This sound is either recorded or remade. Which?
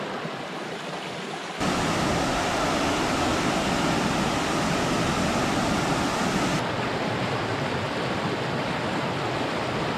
recorded